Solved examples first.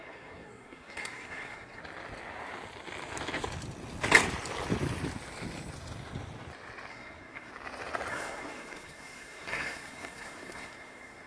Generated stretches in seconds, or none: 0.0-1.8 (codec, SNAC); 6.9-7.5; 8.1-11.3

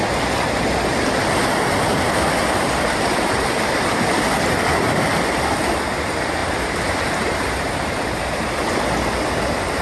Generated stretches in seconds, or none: 1.9-3.8 (vocoder, BigVGAN v2); 6.4-8.9

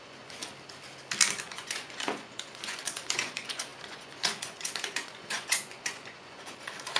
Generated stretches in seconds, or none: 0.0-0.4 (vocoder, Vocos); 1.4-7.0